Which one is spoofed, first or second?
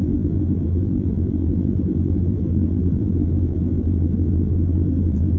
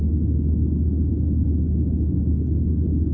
first